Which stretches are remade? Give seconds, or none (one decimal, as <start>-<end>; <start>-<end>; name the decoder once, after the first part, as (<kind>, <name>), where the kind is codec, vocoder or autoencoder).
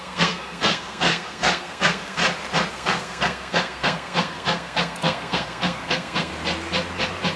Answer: 0.0-2.2 (codec, SNAC); 2.7-6.3